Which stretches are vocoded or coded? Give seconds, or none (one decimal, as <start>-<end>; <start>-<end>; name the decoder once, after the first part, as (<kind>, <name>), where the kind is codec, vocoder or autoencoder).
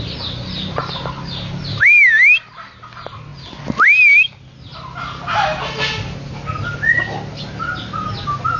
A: none